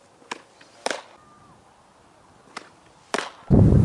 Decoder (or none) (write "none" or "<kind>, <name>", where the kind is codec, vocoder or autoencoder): none